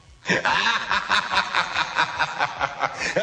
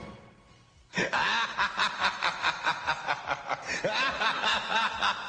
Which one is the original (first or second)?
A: second